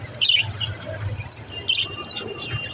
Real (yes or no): yes